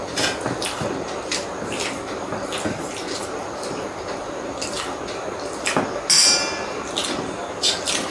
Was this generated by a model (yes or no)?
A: no